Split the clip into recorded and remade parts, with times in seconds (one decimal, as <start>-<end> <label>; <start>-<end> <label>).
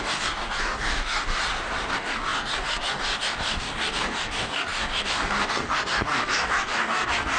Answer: 0.0-1.4 remade; 1.4-1.9 recorded; 1.9-7.4 remade